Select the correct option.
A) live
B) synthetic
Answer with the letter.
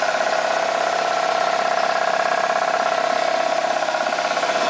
A